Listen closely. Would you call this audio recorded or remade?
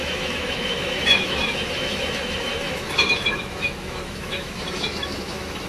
remade